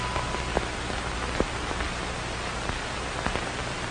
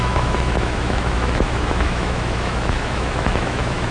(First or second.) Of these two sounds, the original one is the first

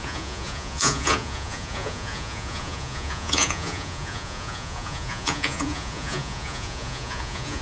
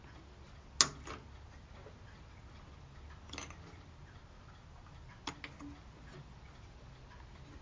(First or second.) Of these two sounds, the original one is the second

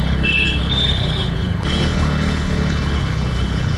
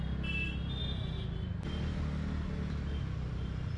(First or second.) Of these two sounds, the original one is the second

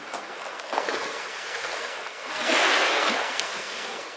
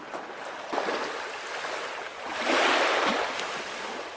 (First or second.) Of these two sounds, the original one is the second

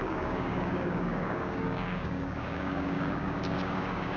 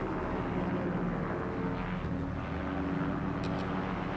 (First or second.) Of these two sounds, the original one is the second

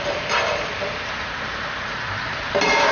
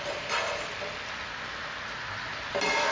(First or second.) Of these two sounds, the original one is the second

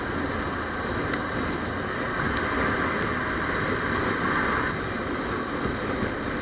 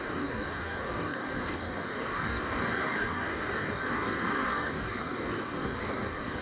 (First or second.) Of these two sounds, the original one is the first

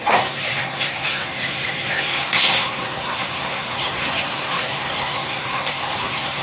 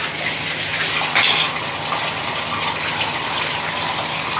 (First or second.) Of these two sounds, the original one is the second